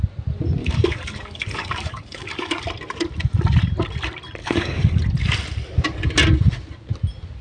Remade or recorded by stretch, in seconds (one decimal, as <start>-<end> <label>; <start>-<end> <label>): 0.0-0.6 recorded; 0.6-2.6 remade; 2.6-4.4 recorded; 4.4-5.0 remade; 5.0-7.4 recorded